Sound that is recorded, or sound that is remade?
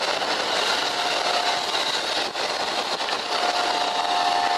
recorded